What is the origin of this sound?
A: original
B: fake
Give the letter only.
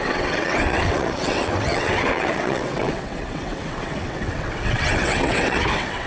B